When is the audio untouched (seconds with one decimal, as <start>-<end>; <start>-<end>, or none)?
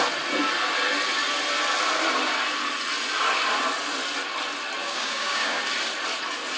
0.0-4.8; 5.6-6.6